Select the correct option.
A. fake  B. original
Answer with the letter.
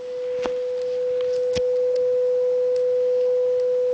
B